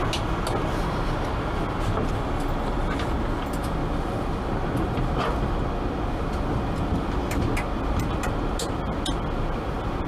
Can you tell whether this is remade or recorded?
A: recorded